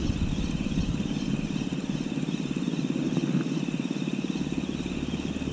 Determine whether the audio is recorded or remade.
recorded